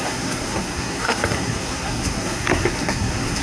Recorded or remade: remade